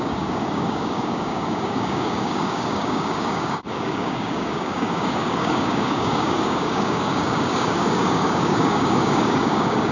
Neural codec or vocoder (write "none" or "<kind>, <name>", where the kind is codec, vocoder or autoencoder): codec, DAC